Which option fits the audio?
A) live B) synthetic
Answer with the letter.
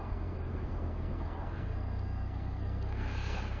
B